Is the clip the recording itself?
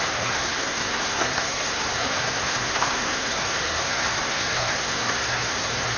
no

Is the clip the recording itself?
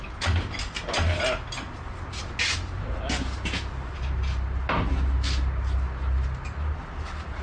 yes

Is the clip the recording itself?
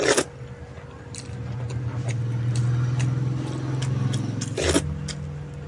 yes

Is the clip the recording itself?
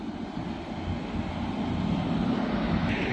yes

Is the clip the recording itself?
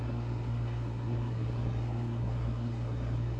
no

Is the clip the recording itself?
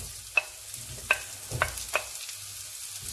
yes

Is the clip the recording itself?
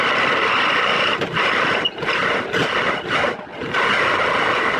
yes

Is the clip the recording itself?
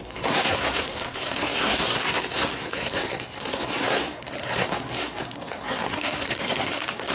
no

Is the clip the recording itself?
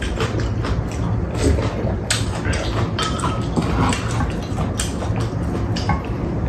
yes